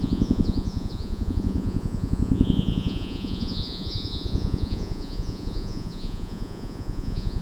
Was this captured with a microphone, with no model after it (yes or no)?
no